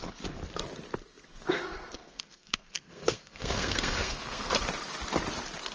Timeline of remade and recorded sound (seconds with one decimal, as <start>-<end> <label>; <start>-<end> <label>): 0.0-1.1 recorded; 1.1-4.5 remade; 4.5-5.7 recorded